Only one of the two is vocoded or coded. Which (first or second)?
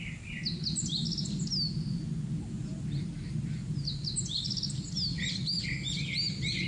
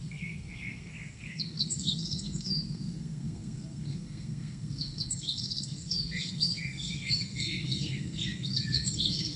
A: second